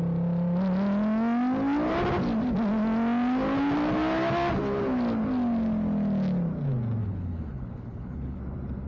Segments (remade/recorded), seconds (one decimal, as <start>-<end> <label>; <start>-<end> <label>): 0.0-7.0 recorded; 7.0-8.4 remade; 8.4-8.9 recorded

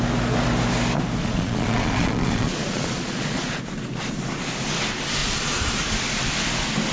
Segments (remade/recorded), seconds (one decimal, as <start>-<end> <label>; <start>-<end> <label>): 0.0-1.2 recorded; 1.2-3.6 remade; 3.6-5.2 recorded; 5.2-5.8 remade; 5.8-6.9 recorded